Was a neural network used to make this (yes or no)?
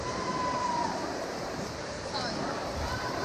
yes